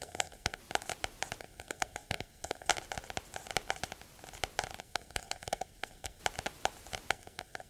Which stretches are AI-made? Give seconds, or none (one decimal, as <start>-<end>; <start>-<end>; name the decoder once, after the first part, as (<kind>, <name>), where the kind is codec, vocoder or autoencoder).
0.0-0.6 (codec, SNAC); 1.4-2.7; 4.8-6.2; 7.1-7.7